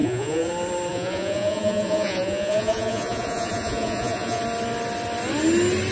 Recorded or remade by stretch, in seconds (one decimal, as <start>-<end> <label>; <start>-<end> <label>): 0.0-0.5 remade; 0.5-0.9 recorded; 0.9-4.4 remade; 4.4-5.9 recorded